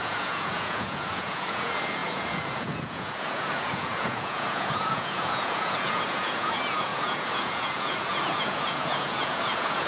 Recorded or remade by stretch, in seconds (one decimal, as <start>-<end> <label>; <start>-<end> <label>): 0.0-9.9 remade